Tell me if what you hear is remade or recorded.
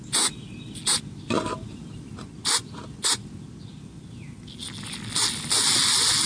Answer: recorded